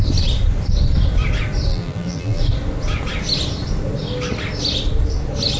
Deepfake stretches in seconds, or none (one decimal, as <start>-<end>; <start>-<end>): 1.7-2.4